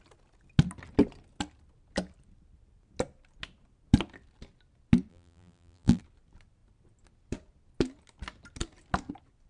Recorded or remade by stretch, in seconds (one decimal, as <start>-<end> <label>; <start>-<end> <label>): 0.0-5.1 recorded; 5.1-6.0 remade; 6.0-9.5 recorded